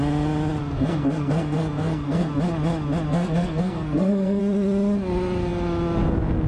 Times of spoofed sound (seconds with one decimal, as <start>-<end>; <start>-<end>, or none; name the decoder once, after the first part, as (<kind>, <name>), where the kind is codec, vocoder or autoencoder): 0.6-2.3 (codec, SNAC); 3.1-4.4